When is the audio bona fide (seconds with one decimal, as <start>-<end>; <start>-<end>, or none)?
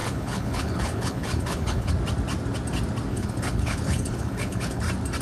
1.9-3.1; 4.8-5.2